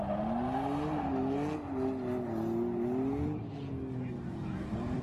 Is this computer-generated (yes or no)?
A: no